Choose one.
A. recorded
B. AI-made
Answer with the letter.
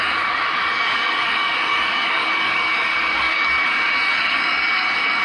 B